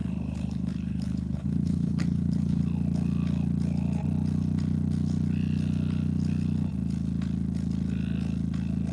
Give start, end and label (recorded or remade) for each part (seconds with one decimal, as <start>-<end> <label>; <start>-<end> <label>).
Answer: 0.0-2.6 remade; 2.6-8.9 recorded